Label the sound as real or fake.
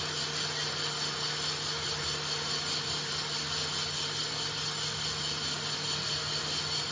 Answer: real